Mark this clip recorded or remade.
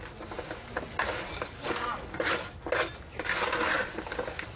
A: recorded